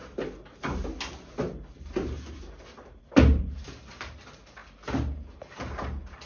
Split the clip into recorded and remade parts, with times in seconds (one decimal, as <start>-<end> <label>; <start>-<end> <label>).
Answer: 0.0-6.3 recorded